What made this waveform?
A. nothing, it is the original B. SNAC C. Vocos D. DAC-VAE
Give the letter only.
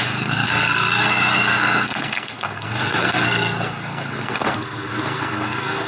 B